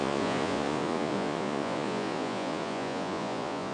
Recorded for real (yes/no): no